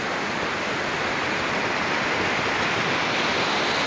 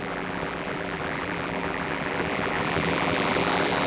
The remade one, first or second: second